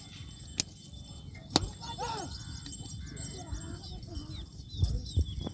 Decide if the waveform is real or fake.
real